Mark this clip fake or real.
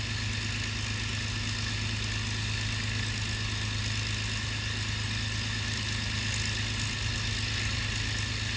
real